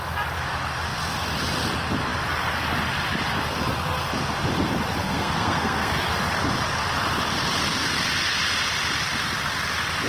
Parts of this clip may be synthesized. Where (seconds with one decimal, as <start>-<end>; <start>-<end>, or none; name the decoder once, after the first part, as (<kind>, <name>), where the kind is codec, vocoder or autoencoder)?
5.0-5.9 (codec, SNAC)

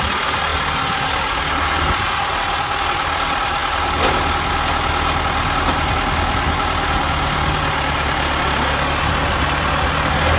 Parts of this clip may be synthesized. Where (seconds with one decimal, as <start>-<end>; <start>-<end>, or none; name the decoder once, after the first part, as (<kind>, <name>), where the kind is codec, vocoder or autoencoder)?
none

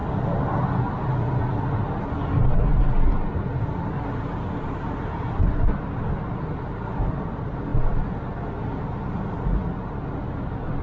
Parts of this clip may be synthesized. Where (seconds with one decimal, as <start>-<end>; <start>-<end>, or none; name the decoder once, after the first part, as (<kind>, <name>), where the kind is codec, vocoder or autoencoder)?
none

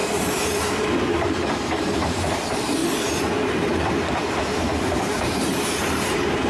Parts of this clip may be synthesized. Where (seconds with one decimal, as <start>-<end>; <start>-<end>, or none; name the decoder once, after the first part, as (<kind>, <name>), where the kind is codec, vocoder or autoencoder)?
0.0-6.5 (vocoder, BigVGAN v2)